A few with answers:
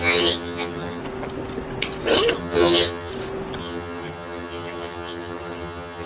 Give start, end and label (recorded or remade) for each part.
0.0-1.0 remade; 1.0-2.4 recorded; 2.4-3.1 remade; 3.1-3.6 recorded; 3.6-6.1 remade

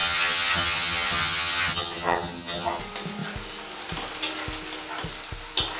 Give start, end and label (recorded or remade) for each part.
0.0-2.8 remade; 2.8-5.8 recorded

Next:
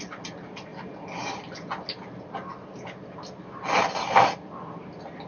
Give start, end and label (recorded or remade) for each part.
0.0-5.3 recorded